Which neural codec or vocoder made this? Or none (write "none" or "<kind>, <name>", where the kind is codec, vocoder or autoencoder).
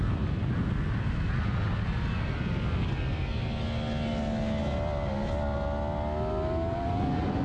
none